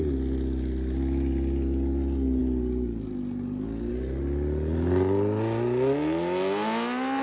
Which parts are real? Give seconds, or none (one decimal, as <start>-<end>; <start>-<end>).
0.0-7.2